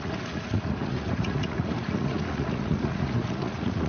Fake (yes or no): yes